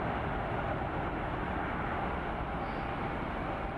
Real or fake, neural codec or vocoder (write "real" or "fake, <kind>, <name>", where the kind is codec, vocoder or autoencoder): real